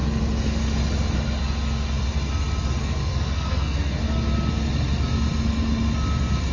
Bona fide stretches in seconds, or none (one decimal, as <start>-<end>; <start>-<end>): 0.0-2.8; 4.0-6.5